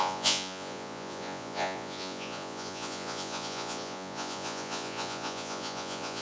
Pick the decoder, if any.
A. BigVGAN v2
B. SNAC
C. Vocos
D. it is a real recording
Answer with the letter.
C